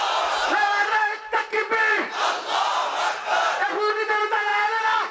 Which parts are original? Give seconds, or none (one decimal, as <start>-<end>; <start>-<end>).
0.0-0.9; 3.7-4.5